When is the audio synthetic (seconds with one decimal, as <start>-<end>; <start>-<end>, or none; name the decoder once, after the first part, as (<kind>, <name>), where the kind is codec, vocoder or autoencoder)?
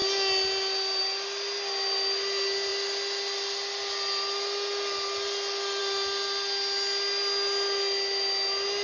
none